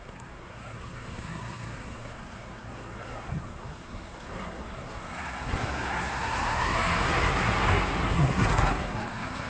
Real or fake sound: fake